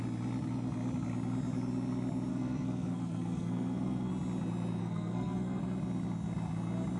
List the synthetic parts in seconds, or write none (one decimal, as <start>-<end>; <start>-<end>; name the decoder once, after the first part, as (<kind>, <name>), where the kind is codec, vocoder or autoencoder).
2.3-4.1 (codec, SNAC); 4.8-5.6

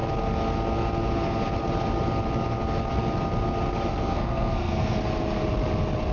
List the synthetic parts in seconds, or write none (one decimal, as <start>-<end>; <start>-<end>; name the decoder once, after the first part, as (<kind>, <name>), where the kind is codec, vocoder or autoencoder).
3.9-5.0 (codec, SNAC)